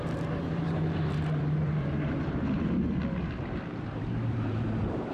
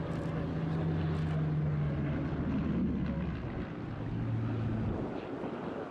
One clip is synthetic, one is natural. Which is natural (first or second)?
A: second